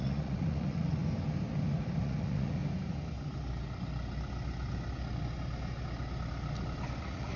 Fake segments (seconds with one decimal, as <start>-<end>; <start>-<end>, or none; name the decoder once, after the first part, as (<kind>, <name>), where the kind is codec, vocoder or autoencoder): 0.0-1.0 (vocoder, Vocos); 2.0-2.6; 7.0-7.4